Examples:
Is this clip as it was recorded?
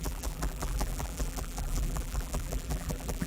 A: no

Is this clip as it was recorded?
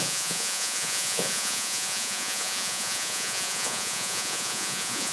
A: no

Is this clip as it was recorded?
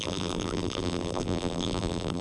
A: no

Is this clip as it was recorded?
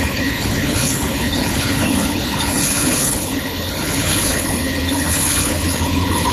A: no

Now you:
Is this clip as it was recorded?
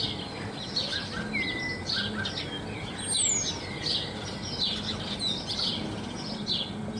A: yes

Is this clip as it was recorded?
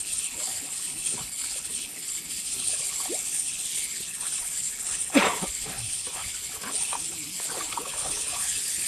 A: no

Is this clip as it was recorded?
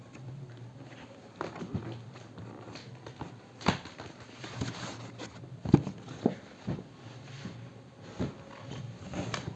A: yes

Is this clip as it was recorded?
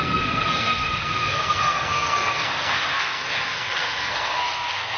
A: no